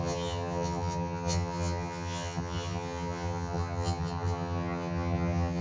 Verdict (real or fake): fake